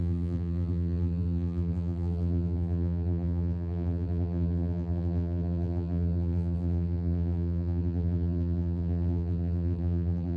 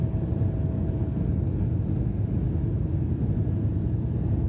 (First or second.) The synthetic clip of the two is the first